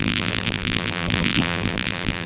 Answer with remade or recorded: remade